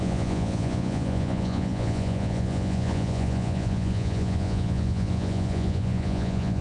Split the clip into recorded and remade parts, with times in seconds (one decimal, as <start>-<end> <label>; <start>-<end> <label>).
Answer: 0.0-6.6 remade